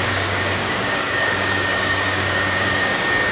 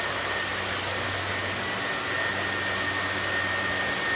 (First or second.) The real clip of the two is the second